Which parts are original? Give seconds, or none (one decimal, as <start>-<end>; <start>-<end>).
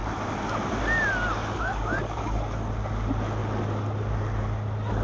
0.0-1.4; 2.7-5.0